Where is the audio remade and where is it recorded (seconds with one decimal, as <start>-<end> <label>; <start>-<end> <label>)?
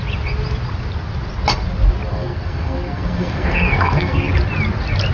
0.0-2.1 recorded; 2.1-4.3 remade; 4.3-5.1 recorded